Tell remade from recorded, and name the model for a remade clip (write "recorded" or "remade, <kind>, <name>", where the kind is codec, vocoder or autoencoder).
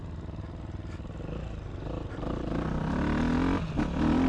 recorded